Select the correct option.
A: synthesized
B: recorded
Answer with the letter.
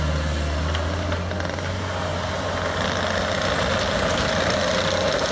B